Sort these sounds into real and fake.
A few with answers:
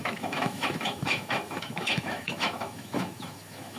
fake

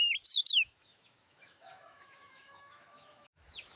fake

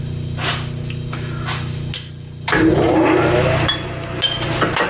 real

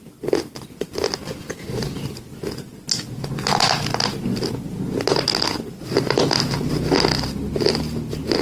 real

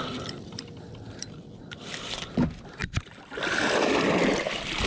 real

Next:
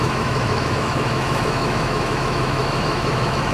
fake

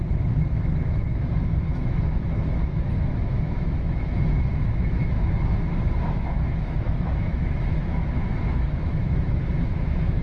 fake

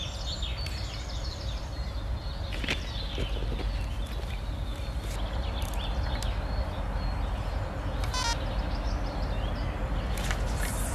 real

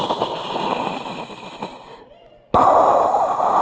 real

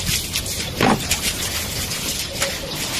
real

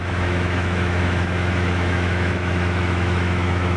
fake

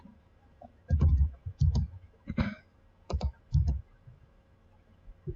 fake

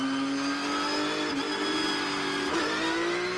real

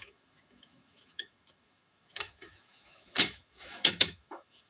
fake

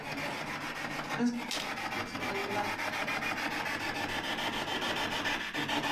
real